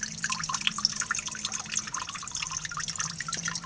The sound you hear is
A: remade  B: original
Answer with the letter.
B